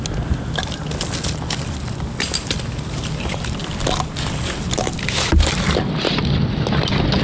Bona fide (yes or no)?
yes